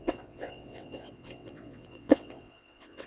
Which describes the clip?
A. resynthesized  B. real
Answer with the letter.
A